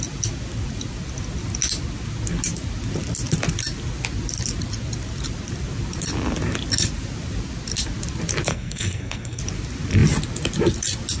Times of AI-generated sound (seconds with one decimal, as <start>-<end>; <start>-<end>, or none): 8.5-9.4